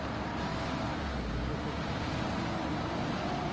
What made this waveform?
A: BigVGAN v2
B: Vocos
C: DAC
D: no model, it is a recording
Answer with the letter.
D